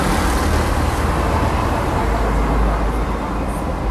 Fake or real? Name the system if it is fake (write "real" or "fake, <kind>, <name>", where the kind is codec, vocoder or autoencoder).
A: real